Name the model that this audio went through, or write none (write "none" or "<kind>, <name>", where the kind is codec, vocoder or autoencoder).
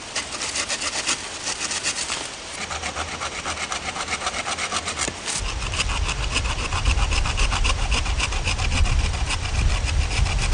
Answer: none